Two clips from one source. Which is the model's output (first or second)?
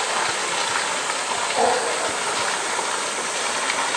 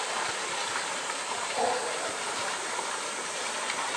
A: second